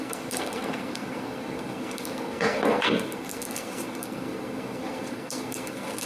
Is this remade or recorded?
remade